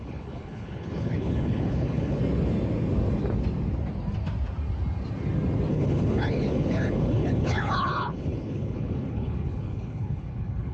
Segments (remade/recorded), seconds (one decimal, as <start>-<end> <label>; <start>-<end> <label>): 0.0-2.2 remade; 2.2-5.7 recorded; 5.7-10.7 remade